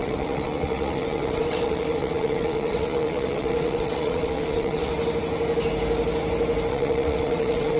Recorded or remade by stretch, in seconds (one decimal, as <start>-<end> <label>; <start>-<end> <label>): 0.0-4.9 remade; 4.9-6.7 recorded; 6.7-7.8 remade